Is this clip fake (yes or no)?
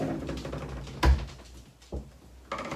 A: no